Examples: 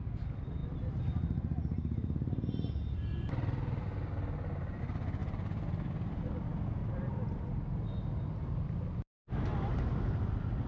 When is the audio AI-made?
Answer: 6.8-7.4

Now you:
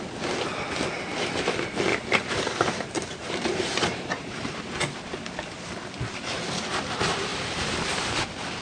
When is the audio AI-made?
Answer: 1.9-4.6; 7.3-8.2